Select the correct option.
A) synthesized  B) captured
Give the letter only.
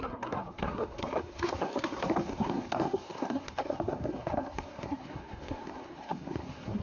A